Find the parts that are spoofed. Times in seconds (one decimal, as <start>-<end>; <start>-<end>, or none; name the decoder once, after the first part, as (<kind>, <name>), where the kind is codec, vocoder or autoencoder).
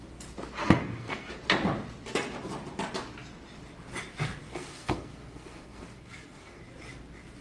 0.6-1.3 (codec, SNAC); 4.5-6.6